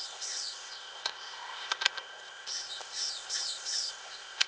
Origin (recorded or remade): remade